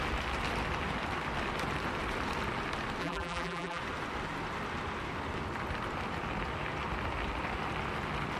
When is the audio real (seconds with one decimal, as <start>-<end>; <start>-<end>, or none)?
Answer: 0.0-3.0; 3.8-8.4